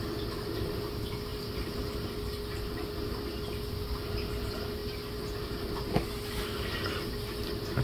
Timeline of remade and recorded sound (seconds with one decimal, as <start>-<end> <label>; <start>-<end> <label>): 0.0-1.3 recorded; 1.3-1.8 remade; 1.8-7.8 recorded